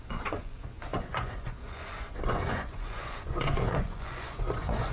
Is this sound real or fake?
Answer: fake